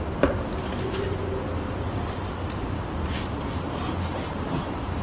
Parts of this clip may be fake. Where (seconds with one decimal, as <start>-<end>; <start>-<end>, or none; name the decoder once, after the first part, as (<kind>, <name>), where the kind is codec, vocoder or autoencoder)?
0.0-0.5 (vocoder, BigVGAN v2); 3.5-5.0